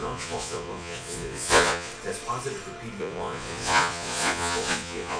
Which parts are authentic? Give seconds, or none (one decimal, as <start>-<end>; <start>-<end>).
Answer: 1.9-3.0